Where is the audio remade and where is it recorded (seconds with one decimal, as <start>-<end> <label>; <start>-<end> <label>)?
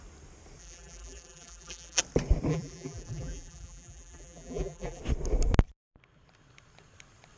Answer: 0.0-0.6 recorded; 0.6-2.0 remade; 2.0-2.5 recorded; 2.5-5.0 remade; 5.0-7.4 recorded